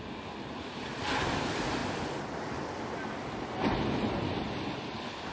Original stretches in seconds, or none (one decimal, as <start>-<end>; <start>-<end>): 0.0-5.3